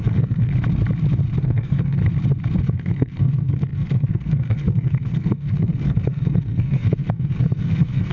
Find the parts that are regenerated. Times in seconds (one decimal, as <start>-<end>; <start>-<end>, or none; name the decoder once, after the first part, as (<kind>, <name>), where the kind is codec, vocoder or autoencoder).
0.0-0.5 (codec, SNAC); 1.4-2.0; 2.6-8.1